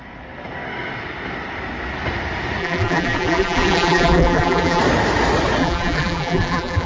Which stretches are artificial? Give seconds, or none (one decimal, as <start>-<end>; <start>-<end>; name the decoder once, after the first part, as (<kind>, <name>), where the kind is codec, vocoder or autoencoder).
2.6-4.8 (vocoder, BigVGAN v2); 5.6-6.9